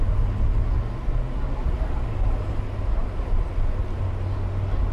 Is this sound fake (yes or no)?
no